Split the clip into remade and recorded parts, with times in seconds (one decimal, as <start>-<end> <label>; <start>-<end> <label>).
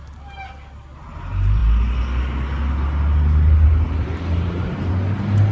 0.0-5.5 recorded